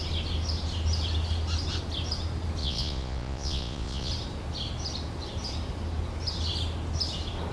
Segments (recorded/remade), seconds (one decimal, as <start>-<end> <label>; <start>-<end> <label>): 0.0-2.6 recorded; 2.6-4.1 remade; 4.1-7.5 recorded